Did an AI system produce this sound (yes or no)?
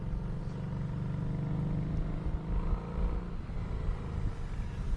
no